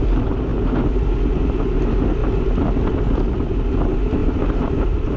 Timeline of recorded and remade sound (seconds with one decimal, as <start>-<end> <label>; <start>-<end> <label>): 0.0-4.2 recorded; 4.2-5.2 remade